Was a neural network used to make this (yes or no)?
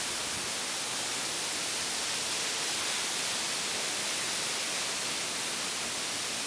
no